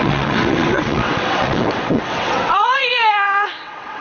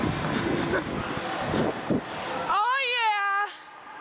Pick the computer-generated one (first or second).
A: first